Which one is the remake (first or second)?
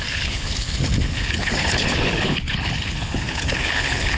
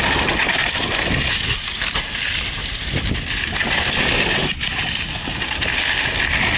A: first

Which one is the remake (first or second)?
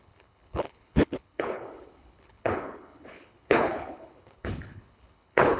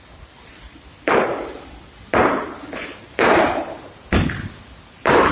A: first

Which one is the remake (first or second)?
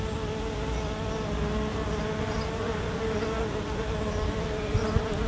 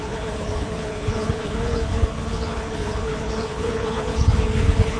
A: second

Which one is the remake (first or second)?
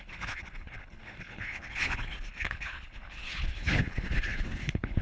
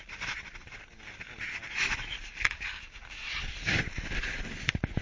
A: first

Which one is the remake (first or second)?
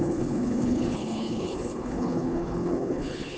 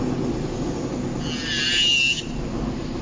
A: first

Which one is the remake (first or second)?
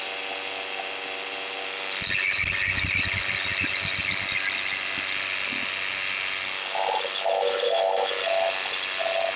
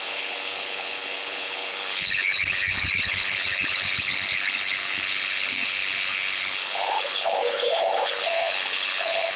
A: second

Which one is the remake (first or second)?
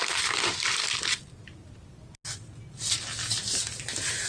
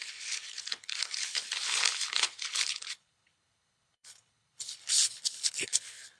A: second